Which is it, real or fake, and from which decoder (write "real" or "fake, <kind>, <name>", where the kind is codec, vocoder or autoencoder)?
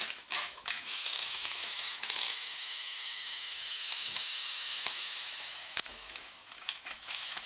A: fake, autoencoder, DAC-VAE